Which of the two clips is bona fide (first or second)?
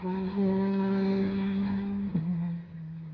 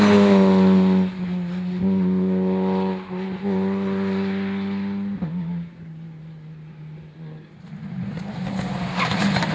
second